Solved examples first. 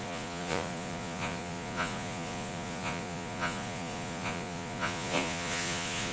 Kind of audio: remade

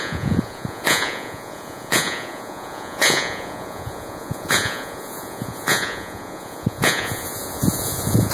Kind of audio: remade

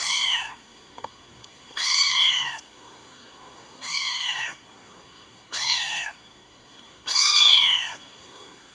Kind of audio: remade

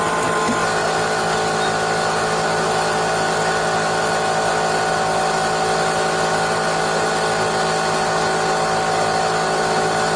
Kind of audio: recorded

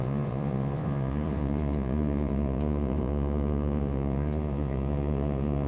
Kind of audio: remade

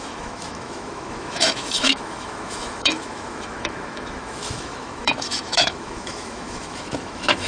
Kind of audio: remade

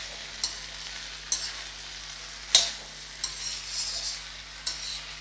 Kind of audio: recorded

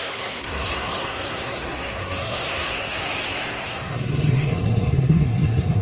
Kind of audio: remade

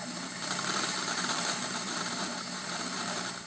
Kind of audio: remade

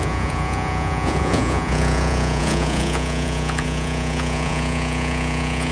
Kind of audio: remade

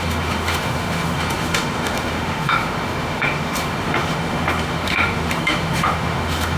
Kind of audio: remade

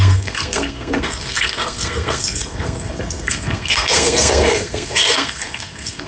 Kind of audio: remade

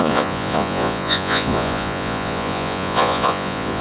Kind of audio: remade